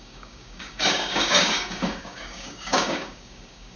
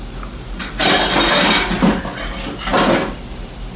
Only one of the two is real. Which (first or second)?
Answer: second